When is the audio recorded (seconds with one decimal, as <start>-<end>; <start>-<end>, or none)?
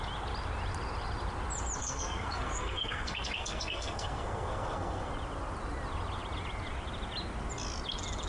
0.0-1.8; 5.1-8.3